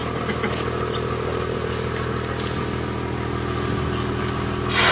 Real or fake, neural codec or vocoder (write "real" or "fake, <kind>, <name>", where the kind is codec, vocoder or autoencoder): real